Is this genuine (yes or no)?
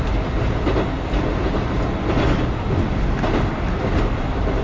yes